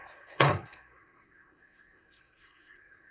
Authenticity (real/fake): fake